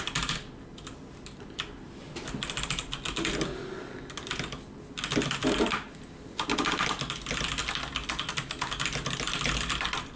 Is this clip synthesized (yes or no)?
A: no